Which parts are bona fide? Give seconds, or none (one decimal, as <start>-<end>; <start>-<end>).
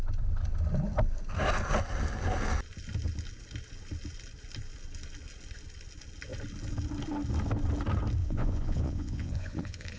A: 0.0-8.2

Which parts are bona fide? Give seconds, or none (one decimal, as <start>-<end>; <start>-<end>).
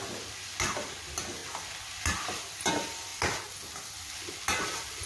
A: 0.0-5.1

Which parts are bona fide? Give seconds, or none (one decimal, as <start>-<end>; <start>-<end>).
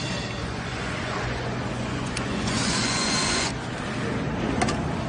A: 0.0-0.4; 3.5-5.1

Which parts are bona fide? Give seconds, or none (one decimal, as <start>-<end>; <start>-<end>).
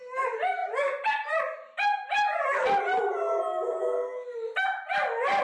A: 0.0-5.4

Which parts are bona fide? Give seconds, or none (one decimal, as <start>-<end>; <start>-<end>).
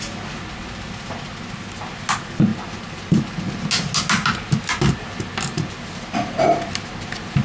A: 0.0-7.4